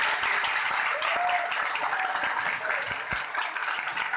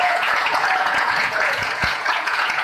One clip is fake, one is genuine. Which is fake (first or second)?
second